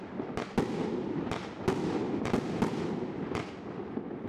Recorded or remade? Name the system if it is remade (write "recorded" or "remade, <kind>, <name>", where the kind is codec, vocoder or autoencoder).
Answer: recorded